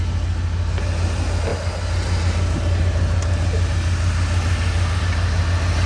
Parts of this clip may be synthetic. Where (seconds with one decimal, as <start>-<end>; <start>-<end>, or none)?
none